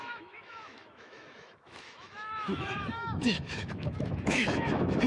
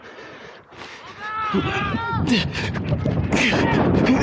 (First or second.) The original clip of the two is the second